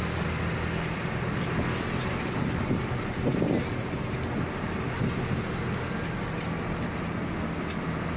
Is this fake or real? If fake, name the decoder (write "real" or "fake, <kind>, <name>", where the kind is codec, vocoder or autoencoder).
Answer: real